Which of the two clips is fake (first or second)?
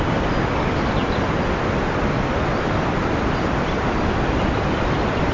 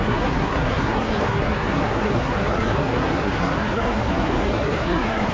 second